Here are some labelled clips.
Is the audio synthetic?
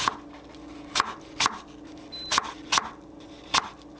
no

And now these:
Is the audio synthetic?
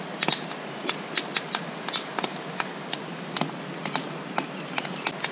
no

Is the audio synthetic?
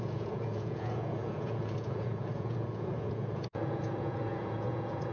yes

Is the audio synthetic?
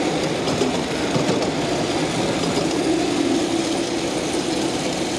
no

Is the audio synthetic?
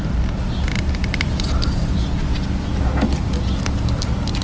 no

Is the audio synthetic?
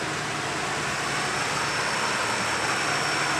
no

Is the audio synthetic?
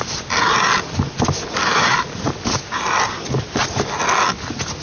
no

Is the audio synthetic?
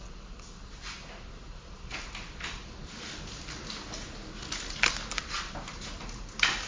no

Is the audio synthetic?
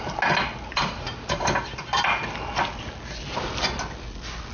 no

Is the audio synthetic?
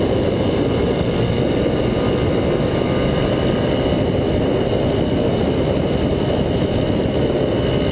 no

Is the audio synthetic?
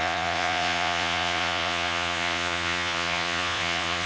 yes